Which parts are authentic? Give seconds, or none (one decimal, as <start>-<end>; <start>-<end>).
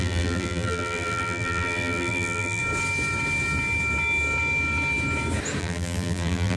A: 2.6-5.6